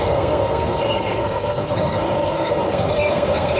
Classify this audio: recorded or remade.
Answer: remade